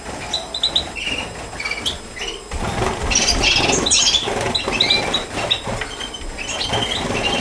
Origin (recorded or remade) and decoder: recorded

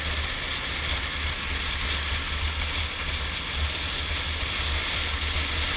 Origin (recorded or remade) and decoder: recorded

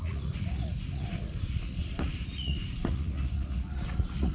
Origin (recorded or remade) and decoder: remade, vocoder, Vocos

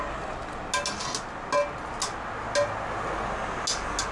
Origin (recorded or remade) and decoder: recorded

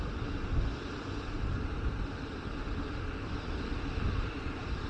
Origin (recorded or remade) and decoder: recorded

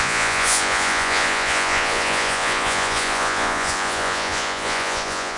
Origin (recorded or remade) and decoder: remade, vocoder, Vocos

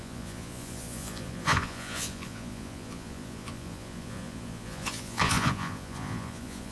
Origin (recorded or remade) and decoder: remade, vocoder, Vocos